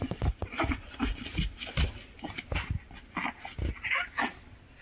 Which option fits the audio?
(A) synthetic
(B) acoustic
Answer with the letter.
B